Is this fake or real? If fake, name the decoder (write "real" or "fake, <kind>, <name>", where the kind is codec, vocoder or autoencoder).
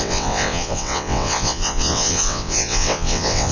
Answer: fake, vocoder, WaveNeXt